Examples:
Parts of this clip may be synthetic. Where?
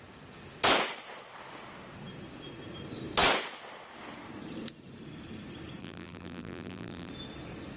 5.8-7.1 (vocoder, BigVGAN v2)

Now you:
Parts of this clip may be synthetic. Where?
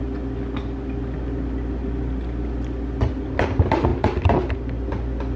none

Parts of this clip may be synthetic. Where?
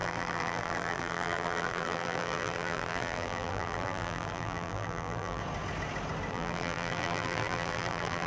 0.0-5.4 (vocoder, BigVGAN v2); 6.3-8.3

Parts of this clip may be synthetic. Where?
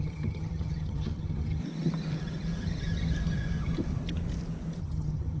0.0-1.6 (vocoder, HiFi-GAN); 4.8-5.4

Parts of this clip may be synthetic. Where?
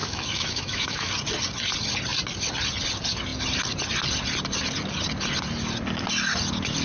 0.0-1.1 (autoencoder, DAC-VAE)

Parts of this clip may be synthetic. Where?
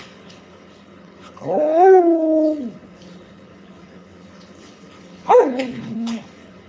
0.0-6.7 (codec, HILCodec)